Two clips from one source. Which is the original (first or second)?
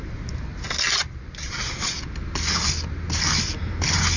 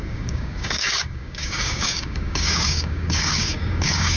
first